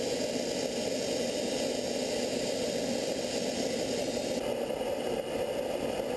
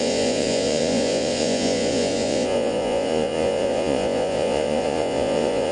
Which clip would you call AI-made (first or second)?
second